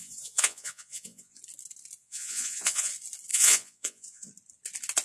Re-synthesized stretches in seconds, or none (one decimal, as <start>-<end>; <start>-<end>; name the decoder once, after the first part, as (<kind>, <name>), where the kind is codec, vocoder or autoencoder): 0.0-1.4 (vocoder, Vocos); 2.0-2.9; 3.3-4.3